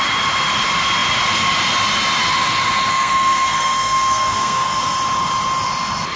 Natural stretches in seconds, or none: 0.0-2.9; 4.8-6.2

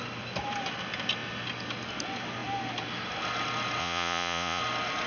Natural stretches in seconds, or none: 0.0-3.8; 4.6-5.1